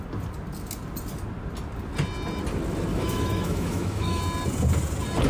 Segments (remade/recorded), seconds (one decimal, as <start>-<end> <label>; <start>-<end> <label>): 0.0-2.9 recorded; 2.9-4.2 remade; 4.2-5.3 recorded